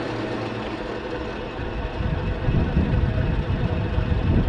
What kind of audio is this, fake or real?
real